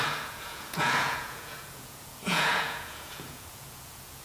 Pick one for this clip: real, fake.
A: fake